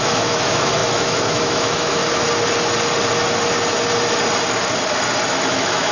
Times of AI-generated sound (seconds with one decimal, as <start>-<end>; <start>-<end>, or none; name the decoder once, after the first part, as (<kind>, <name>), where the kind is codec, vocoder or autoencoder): 0.0-2.0 (autoencoder, DAC-VAE); 5.5-5.9